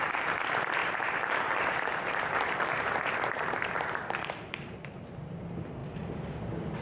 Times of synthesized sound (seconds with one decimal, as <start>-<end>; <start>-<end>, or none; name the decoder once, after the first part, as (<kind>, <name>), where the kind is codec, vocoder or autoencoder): 0.8-4.9 (vocoder, BigVGAN v2)